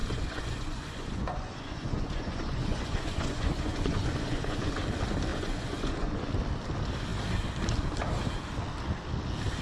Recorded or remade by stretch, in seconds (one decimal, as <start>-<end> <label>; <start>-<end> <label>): 0.0-4.7 remade; 4.7-5.3 recorded; 5.3-6.3 remade; 6.3-9.6 recorded